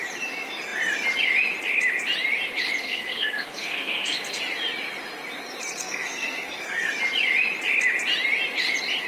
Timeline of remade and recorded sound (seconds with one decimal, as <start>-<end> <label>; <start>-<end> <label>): 0.0-2.8 recorded; 2.8-4.4 remade; 4.4-5.8 recorded; 5.8-6.9 remade; 6.9-9.1 recorded